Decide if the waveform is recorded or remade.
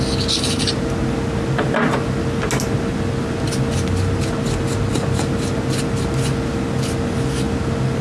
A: recorded